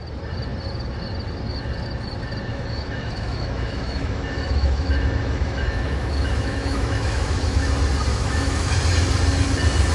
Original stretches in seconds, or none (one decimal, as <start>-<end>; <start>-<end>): 0.0-2.5; 7.7-8.1; 8.7-9.9